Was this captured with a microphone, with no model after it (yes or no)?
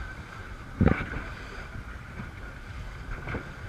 no